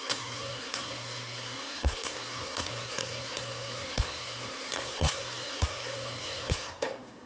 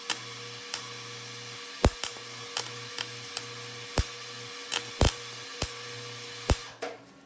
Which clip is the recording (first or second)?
second